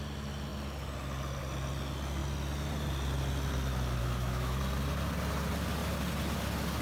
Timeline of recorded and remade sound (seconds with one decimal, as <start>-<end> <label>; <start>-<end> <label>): 0.0-4.0 recorded; 4.0-4.6 remade; 4.6-6.8 recorded